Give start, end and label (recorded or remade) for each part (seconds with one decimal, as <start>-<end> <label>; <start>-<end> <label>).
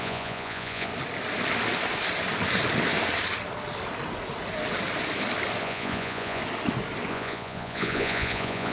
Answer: 0.0-0.9 remade; 0.9-5.6 recorded; 5.6-6.4 remade; 6.4-7.1 recorded; 7.1-8.7 remade